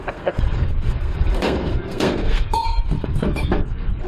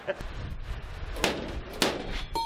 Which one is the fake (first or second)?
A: first